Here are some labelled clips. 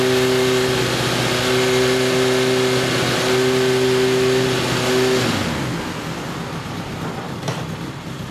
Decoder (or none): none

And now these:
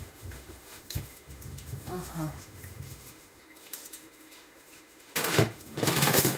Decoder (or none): autoencoder, DAC-VAE